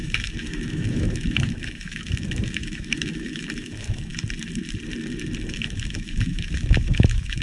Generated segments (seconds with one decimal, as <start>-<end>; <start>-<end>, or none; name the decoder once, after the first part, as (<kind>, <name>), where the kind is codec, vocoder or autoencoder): 0.0-4.1 (autoencoder, DAC-VAE); 5.5-7.4